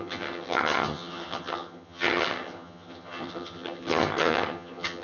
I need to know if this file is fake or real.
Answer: fake